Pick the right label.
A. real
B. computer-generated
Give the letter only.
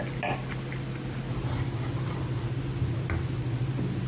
A